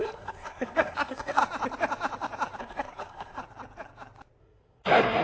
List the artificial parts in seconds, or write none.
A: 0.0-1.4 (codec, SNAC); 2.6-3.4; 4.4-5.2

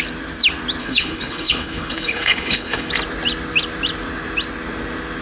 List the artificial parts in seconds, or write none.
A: 0.8-2.9 (codec, HILCodec)

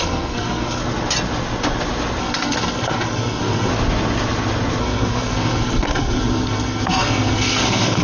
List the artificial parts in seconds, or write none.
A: 0.0-0.8 (codec, SNAC); 2.2-3.7; 4.8-8.0